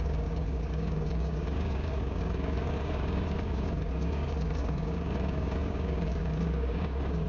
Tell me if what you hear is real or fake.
fake